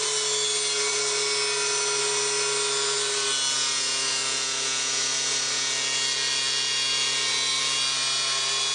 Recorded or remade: recorded